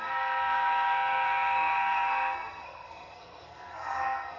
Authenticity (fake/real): fake